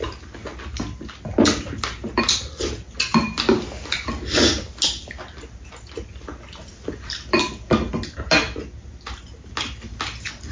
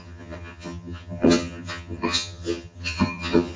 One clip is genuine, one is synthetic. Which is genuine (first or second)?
first